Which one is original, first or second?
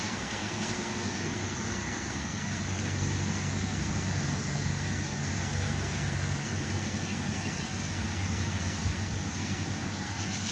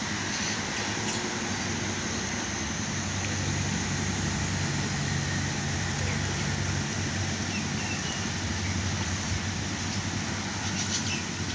second